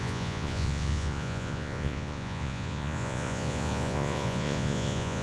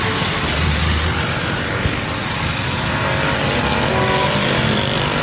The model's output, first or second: first